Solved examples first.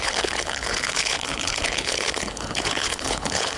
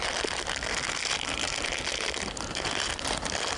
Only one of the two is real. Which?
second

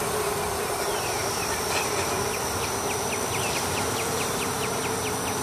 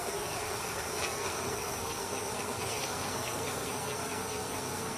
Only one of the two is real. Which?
first